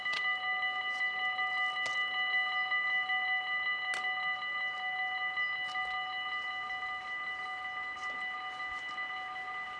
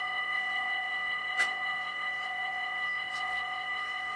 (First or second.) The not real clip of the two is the second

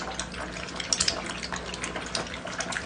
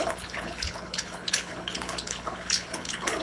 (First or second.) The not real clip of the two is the second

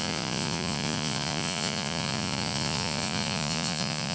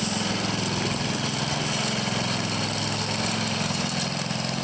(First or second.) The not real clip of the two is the first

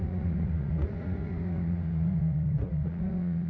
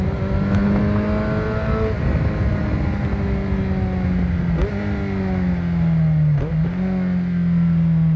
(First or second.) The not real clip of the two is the first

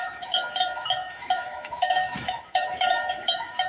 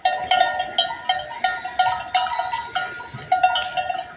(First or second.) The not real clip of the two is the first